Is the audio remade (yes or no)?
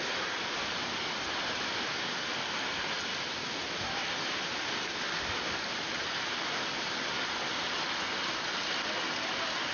no